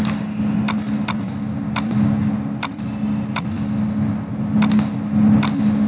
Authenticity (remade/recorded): recorded